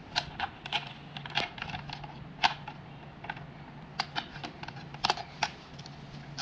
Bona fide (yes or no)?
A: yes